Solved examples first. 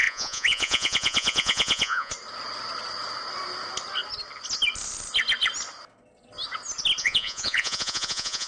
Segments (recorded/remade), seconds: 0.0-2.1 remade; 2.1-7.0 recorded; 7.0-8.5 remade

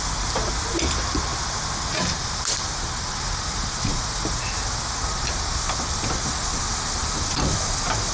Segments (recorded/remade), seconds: 0.0-8.1 recorded

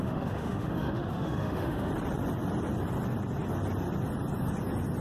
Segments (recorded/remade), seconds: 0.0-1.9 remade; 1.9-5.0 recorded

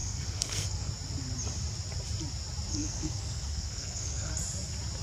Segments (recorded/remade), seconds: 0.0-0.9 remade; 0.9-2.7 recorded; 2.7-4.3 remade; 4.3-5.0 recorded

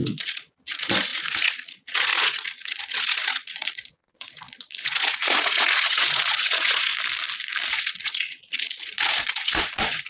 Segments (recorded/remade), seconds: 0.0-6.9 remade; 6.9-7.7 recorded; 7.7-10.1 remade

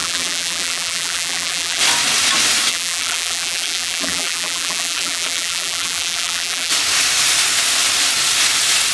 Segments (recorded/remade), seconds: 0.0-1.8 remade; 1.8-2.7 recorded; 2.7-6.7 remade; 6.7-8.9 recorded

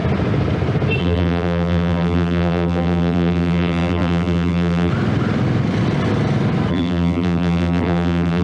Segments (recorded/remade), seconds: 0.0-1.0 recorded; 1.0-4.9 remade; 4.9-6.7 recorded; 6.7-8.4 remade

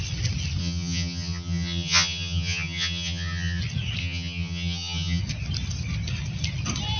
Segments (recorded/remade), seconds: 0.0-0.6 recorded; 0.6-3.6 remade; 3.6-4.0 recorded; 4.0-5.2 remade; 5.2-7.0 recorded